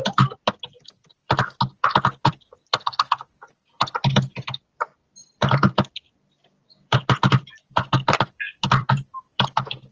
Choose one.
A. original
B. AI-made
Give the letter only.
B